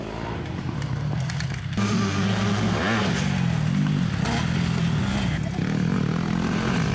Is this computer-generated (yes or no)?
no